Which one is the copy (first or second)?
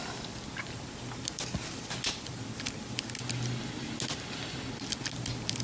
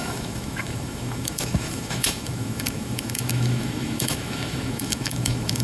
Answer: second